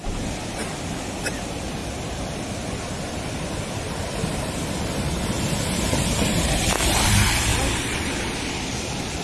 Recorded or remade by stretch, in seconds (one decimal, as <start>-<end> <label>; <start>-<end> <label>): 0.0-0.6 recorded; 0.6-1.2 remade; 1.2-7.5 recorded; 7.5-8.1 remade; 8.1-9.2 recorded